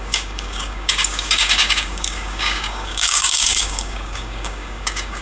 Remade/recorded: remade